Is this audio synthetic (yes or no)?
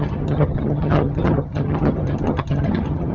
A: yes